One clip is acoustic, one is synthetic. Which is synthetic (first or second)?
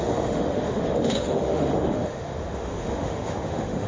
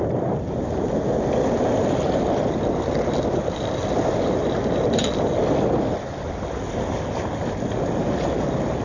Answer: first